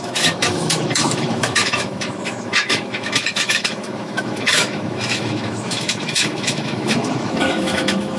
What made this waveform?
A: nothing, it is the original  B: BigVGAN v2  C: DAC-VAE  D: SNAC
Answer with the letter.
C